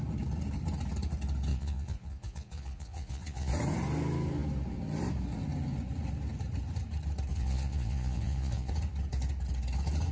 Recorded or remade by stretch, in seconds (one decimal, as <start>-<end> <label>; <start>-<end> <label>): 0.0-1.5 recorded; 1.5-3.5 remade; 3.5-7.3 recorded; 7.3-8.7 remade; 8.7-10.1 recorded